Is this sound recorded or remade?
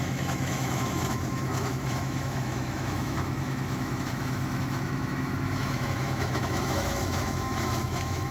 remade